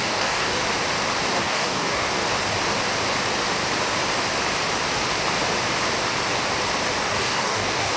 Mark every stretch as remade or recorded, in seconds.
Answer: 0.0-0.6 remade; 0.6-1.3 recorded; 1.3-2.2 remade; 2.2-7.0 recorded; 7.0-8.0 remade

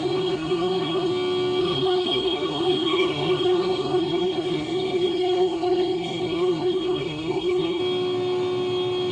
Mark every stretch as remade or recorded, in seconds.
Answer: 0.0-1.1 remade; 1.1-1.6 recorded; 1.6-7.8 remade; 7.8-9.1 recorded